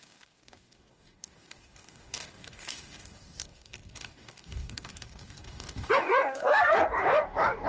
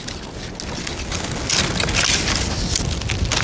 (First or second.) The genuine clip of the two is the second